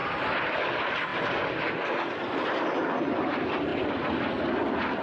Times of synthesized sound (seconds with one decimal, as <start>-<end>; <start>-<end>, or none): none